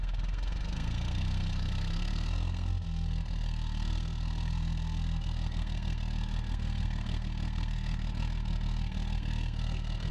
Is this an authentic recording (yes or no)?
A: no